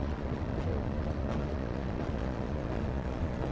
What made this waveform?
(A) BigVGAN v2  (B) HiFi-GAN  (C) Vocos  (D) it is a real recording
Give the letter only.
C